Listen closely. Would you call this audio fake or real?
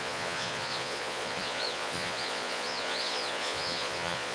fake